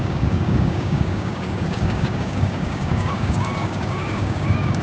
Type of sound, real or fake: fake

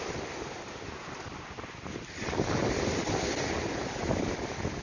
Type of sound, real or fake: real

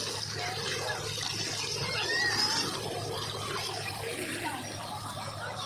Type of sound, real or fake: real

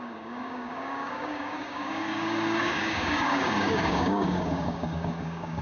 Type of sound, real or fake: fake